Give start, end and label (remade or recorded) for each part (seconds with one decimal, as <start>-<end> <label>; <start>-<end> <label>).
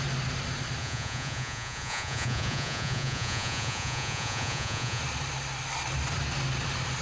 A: 0.0-0.8 recorded; 0.8-5.0 remade; 5.0-7.0 recorded